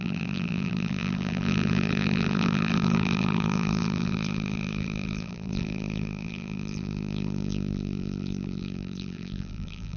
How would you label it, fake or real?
fake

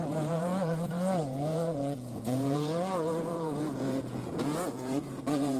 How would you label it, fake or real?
fake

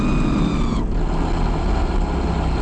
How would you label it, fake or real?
real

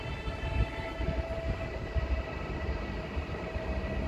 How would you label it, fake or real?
real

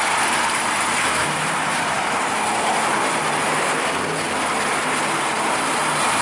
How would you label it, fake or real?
fake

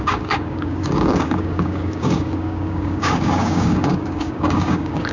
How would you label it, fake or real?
fake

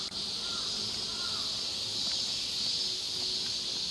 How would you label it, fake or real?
real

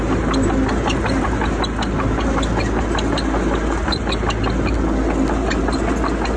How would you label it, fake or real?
real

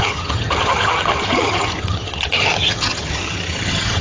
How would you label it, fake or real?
fake